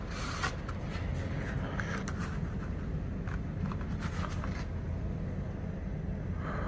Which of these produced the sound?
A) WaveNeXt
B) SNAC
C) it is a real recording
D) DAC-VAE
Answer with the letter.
C